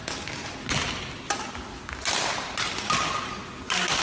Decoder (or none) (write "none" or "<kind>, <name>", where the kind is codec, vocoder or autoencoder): none